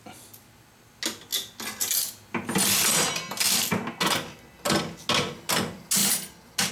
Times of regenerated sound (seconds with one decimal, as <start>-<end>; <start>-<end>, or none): none